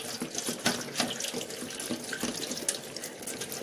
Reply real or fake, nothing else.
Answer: real